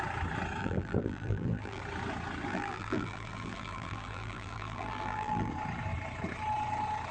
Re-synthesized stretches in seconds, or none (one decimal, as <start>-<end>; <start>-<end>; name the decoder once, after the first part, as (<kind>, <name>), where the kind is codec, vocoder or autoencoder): 0.6-1.8 (vocoder, BigVGAN v2); 2.5-5.5